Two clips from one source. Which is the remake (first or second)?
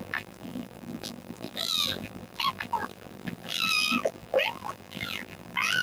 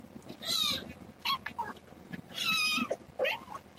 first